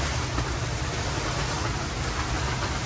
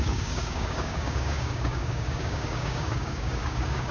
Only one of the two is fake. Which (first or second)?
second